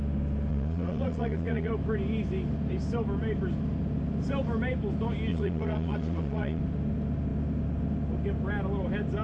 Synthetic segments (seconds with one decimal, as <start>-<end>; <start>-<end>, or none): 0.5-1.7; 5.3-6.6